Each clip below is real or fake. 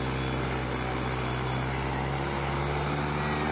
real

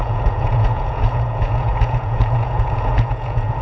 fake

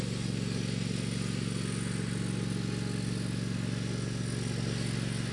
real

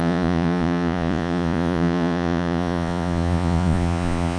fake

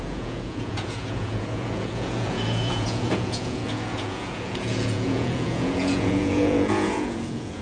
fake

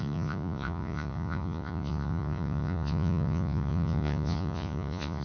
fake